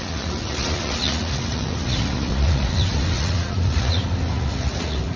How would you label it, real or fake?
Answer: fake